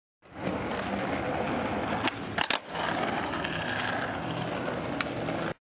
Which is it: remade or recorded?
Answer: recorded